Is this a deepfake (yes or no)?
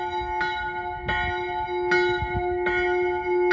no